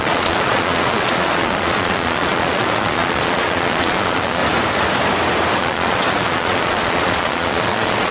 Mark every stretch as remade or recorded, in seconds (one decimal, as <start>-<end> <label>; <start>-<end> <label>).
0.0-4.4 remade; 4.4-5.6 recorded; 5.6-8.1 remade